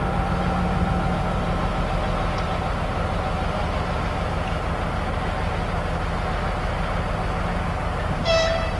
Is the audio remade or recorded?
recorded